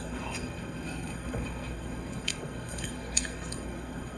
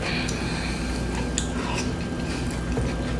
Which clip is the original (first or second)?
second